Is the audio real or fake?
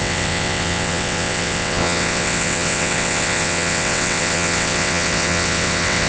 fake